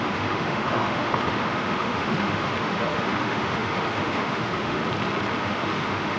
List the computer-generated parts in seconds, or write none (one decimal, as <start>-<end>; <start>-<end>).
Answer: 0.0-4.8; 5.4-6.2